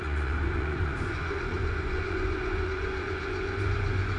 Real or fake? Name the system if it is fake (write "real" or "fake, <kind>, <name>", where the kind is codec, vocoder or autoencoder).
fake, vocoder, Vocos